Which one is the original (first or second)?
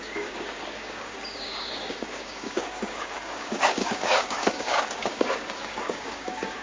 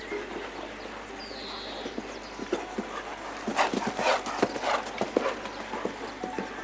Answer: second